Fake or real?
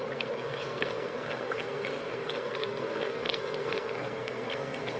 fake